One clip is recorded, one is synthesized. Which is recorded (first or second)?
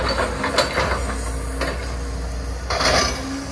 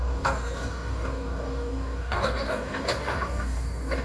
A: first